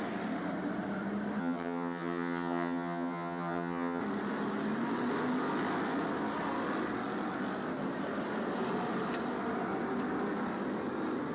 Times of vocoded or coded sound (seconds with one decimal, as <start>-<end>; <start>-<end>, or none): 1.4-4.0